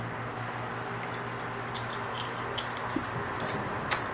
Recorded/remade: recorded